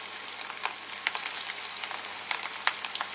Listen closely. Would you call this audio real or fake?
real